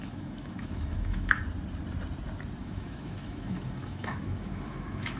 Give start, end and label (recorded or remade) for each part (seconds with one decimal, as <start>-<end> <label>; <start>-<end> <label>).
0.0-1.4 remade; 1.4-2.6 recorded; 2.6-5.2 remade